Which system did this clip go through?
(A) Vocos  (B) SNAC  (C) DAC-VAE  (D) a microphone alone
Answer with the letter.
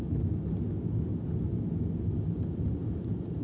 D